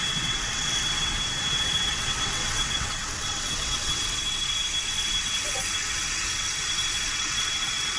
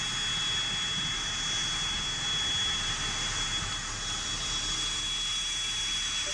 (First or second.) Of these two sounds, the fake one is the first